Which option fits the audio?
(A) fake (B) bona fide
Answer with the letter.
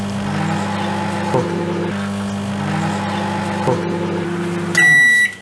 B